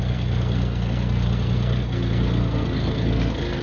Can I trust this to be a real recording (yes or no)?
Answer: no